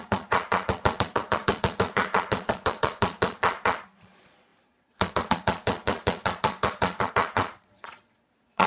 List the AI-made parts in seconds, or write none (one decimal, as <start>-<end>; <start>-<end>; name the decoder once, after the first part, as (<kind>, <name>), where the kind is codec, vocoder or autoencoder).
0.0-8.7 (vocoder, Vocos)